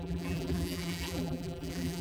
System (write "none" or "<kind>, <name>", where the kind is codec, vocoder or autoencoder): vocoder, BigVGAN v2